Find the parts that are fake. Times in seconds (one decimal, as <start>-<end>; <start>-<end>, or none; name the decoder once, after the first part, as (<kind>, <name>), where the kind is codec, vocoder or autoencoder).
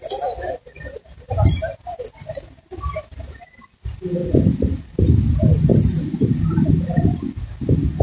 none